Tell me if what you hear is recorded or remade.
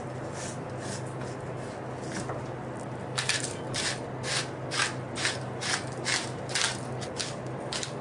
recorded